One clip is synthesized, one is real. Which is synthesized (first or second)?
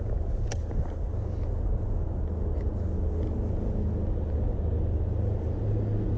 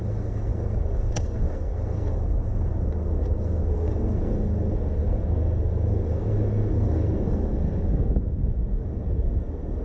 second